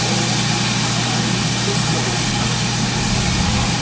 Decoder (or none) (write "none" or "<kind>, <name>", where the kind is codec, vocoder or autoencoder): none